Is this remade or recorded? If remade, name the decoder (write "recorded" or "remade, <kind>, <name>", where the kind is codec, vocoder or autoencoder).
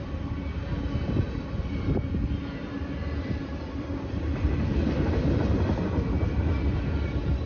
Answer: remade, vocoder, BigVGAN v2